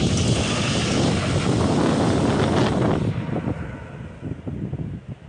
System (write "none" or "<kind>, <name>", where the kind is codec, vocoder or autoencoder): none